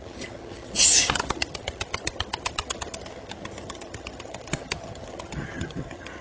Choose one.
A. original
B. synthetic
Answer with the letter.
B